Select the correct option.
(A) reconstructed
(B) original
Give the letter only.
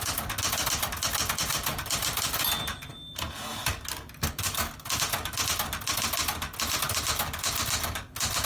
B